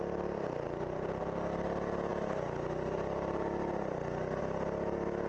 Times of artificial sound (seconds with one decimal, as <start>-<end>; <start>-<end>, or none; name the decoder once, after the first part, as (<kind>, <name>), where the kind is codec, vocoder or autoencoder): none